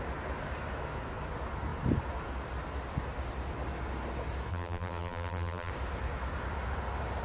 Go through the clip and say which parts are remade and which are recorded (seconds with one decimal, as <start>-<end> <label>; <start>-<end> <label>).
0.0-4.5 recorded; 4.5-5.7 remade; 5.7-7.2 recorded